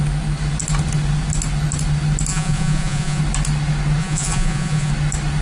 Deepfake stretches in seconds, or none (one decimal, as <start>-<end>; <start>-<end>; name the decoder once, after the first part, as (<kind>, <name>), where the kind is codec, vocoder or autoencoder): 2.3-3.2 (vocoder, Vocos); 4.0-4.9